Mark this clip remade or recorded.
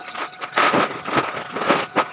recorded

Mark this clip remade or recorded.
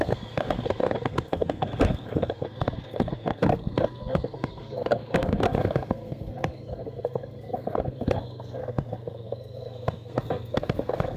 remade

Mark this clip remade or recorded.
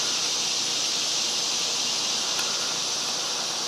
recorded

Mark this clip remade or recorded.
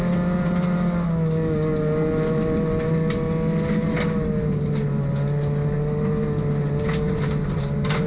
recorded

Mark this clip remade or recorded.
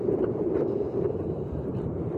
remade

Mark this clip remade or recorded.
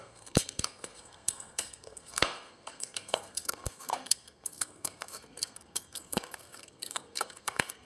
remade